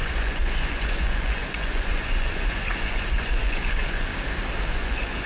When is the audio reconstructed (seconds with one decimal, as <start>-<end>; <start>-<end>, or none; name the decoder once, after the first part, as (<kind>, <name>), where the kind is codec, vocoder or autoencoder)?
0.0-4.1 (vocoder, Vocos); 4.7-5.3